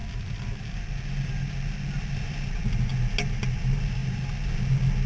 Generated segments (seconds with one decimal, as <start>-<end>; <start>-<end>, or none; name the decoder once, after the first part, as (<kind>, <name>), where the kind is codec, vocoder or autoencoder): none